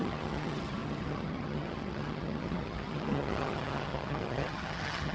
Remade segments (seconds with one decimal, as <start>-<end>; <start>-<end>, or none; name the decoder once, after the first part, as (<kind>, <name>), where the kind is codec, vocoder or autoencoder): 0.0-5.1 (vocoder, HiFi-GAN)